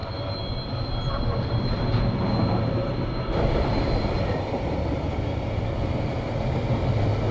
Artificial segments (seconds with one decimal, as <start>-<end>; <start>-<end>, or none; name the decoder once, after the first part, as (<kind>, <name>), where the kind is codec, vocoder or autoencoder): none